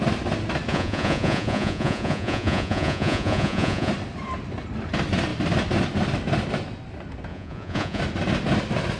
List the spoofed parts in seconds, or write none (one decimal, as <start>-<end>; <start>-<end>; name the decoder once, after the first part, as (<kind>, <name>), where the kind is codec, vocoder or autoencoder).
0.7-3.9 (vocoder, Vocos); 7.3-8.0